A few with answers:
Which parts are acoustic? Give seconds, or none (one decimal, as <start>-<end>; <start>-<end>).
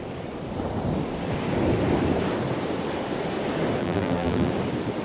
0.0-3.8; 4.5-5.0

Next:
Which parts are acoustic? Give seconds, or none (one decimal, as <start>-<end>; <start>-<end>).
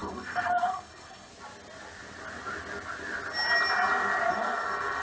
1.3-4.3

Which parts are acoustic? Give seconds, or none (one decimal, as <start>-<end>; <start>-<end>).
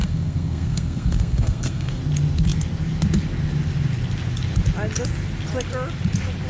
2.0-6.5